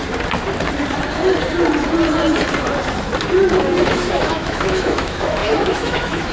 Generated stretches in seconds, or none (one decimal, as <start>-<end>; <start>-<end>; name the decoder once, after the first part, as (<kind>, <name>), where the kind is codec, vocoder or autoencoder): 3.8-6.3 (autoencoder, DAC-VAE)